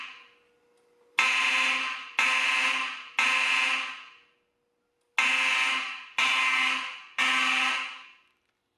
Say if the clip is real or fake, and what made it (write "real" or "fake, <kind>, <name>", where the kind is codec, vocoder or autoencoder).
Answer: real